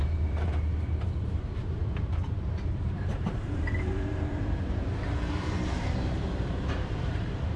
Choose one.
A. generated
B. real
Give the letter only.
A